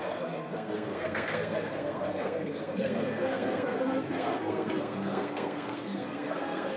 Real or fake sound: fake